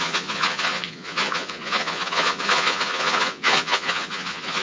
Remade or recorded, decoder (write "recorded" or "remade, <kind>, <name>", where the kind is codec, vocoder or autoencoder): remade, vocoder, Vocos